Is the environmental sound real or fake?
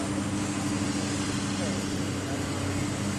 real